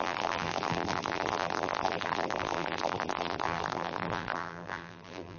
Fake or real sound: fake